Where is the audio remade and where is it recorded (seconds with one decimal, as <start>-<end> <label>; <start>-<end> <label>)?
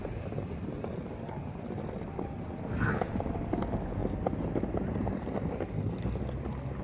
0.0-6.8 recorded